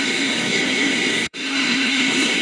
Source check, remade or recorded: remade